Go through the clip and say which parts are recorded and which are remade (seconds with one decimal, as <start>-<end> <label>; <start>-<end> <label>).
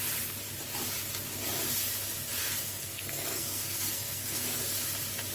0.0-2.4 recorded; 2.4-4.6 remade; 4.6-5.3 recorded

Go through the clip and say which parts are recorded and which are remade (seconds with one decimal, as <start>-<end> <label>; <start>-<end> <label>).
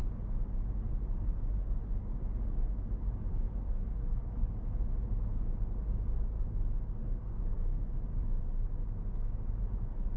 0.0-3.3 recorded; 3.3-4.5 remade; 4.5-7.0 recorded; 7.0-7.9 remade; 7.9-10.2 recorded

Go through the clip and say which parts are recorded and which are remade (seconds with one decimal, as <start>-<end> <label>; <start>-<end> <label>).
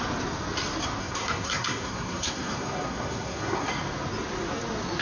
0.0-1.0 recorded; 1.0-3.7 remade; 3.7-5.0 recorded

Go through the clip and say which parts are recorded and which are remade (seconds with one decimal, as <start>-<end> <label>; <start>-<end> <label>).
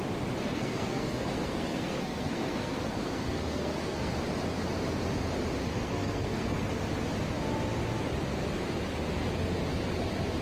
0.0-0.4 recorded; 0.4-4.1 remade; 4.1-5.6 recorded; 5.6-6.7 remade; 6.7-10.4 recorded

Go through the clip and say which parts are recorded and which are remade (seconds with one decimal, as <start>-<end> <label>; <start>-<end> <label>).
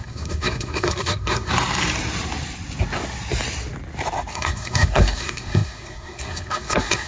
0.0-1.5 remade; 1.5-4.3 recorded; 4.3-7.1 remade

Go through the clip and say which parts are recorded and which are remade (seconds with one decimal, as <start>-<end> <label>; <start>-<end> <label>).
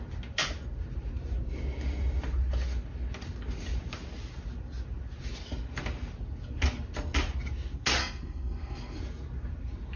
0.0-8.0 recorded; 8.0-9.0 remade; 9.0-10.0 recorded